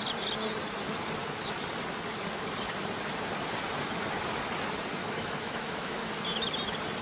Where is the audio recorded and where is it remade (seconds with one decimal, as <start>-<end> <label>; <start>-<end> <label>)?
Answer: 0.0-5.0 recorded; 5.0-6.1 remade; 6.1-7.0 recorded